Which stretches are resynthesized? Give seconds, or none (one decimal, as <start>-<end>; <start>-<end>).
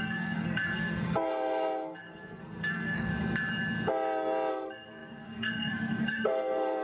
0.0-3.1; 4.5-6.8